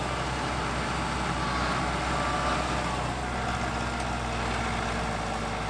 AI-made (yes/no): no